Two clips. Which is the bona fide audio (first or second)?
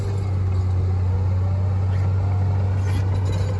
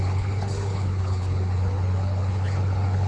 first